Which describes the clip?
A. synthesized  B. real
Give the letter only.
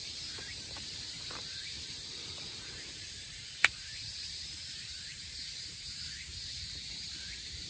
A